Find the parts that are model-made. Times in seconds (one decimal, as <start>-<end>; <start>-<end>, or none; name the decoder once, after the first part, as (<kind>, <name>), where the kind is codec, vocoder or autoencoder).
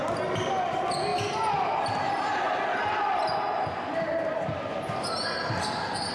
none